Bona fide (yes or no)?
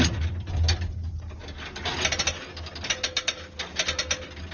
yes